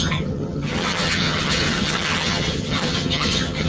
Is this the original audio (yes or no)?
no